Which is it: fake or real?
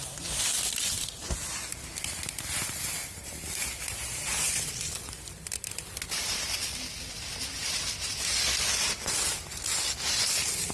real